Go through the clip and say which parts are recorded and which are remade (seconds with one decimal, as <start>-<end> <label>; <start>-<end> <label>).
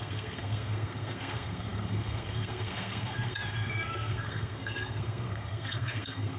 0.0-6.4 remade